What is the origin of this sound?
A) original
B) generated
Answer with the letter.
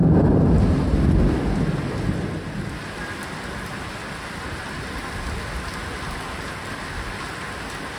A